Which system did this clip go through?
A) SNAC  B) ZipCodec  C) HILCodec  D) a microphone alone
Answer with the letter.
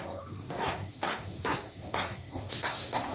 A